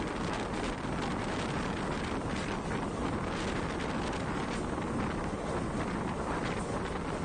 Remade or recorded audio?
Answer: recorded